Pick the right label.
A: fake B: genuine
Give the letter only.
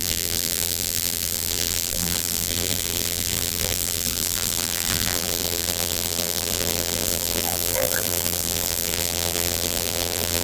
A